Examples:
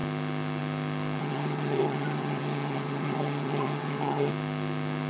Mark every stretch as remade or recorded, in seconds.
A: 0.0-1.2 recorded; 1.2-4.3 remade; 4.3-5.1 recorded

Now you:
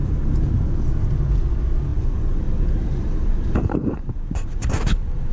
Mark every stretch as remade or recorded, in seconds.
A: 0.0-0.5 remade; 0.5-1.9 recorded; 1.9-5.3 remade